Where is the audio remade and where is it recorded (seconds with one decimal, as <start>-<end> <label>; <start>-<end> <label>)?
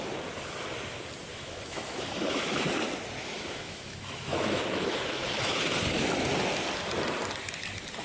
0.0-1.3 recorded; 1.3-2.7 remade; 2.7-3.2 recorded; 3.2-5.6 remade; 5.6-8.0 recorded